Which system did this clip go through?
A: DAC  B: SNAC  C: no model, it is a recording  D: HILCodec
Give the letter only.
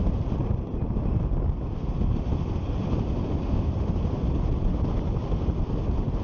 C